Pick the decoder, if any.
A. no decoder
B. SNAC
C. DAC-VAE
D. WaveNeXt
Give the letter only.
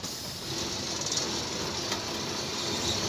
A